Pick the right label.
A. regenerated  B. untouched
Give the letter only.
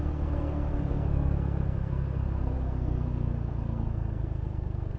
A